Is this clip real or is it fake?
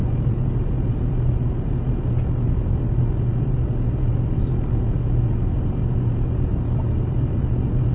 real